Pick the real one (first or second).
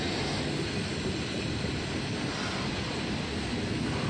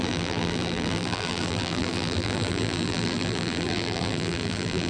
first